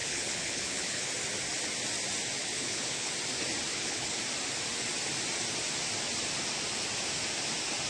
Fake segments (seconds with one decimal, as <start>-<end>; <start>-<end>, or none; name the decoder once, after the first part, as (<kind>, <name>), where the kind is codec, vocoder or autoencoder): 0.0-1.1 (codec, HILCodec); 2.4-3.1; 3.7-4.2